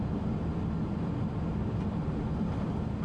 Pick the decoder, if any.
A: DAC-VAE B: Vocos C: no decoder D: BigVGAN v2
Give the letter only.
C